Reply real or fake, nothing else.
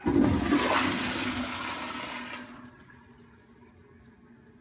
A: real